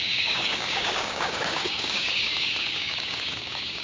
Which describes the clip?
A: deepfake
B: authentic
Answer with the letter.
A